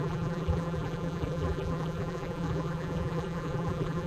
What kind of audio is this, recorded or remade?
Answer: remade